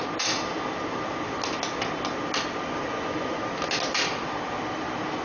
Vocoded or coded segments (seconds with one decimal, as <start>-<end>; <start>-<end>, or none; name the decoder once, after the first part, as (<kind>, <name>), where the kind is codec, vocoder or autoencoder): 2.9-3.4 (vocoder, Vocos)